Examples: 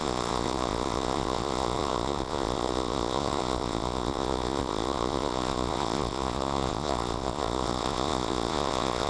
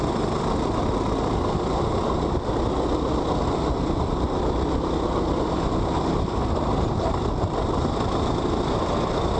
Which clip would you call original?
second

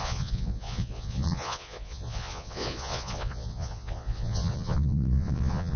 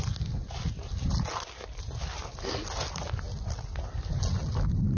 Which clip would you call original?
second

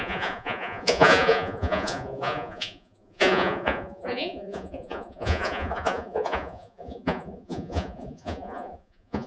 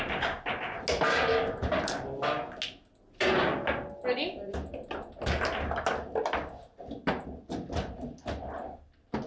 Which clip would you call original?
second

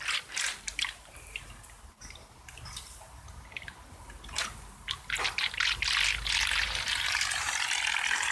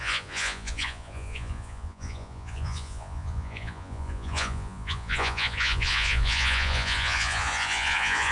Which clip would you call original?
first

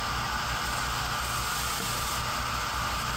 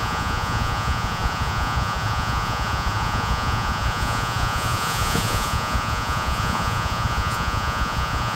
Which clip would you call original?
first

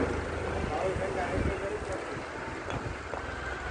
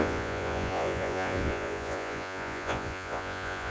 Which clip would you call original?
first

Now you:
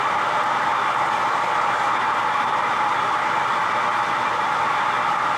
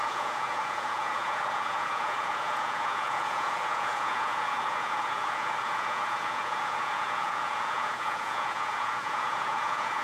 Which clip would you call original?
first